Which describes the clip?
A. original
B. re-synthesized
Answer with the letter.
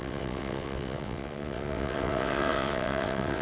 B